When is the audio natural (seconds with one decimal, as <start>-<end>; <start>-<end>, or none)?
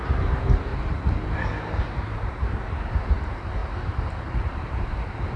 0.7-1.8; 3.6-4.4